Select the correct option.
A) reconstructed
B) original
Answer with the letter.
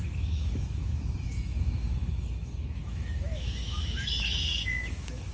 A